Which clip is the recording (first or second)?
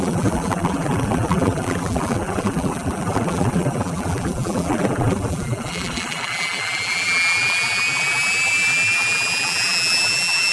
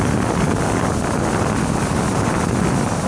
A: second